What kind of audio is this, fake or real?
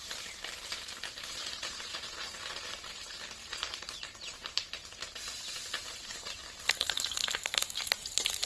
fake